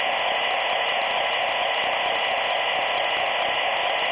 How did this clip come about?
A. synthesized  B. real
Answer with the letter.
B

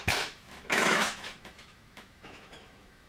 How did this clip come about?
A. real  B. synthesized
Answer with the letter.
B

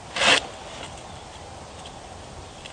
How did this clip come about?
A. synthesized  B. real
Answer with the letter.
B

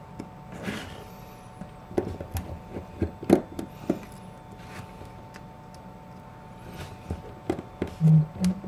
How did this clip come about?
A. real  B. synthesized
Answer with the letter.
A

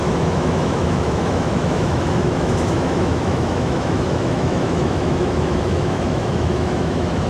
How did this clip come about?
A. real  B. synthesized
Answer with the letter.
B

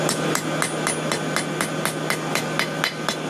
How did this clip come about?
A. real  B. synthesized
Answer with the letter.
A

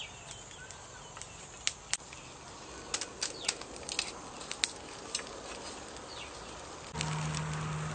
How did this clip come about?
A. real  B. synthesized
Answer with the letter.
A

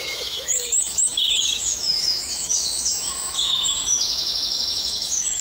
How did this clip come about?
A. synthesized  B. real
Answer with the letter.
A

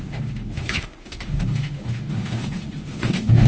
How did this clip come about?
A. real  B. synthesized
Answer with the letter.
B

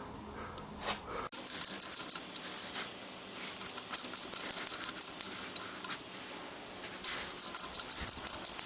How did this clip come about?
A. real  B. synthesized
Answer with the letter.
A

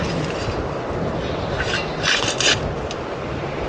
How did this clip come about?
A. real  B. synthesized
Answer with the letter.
A